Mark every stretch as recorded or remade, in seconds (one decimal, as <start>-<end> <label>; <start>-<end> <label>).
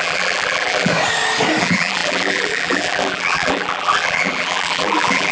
0.0-0.9 remade; 0.9-1.6 recorded; 1.6-5.3 remade